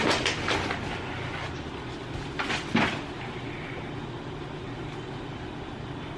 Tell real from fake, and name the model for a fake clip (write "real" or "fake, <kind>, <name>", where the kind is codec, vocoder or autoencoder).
real